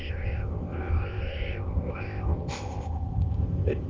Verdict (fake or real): fake